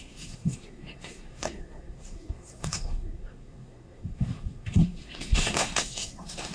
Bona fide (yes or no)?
no